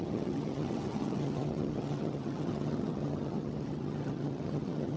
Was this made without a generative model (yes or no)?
no